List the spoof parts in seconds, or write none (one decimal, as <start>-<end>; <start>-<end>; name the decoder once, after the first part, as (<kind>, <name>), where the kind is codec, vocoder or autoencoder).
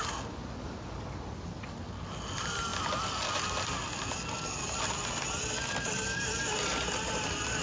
none